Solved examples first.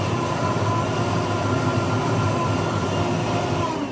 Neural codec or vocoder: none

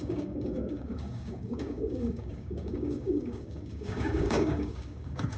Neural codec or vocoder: codec, DAC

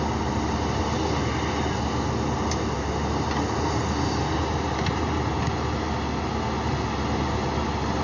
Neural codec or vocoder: none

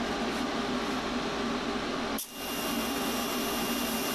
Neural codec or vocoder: none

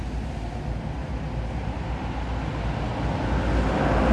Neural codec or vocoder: none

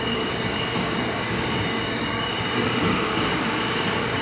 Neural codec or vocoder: codec, DAC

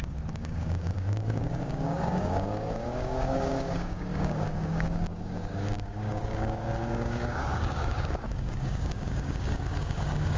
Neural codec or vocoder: codec, DAC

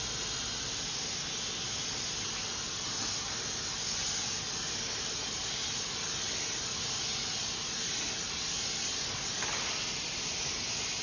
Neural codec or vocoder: none